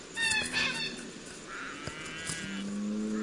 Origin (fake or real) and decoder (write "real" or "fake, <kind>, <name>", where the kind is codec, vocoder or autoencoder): real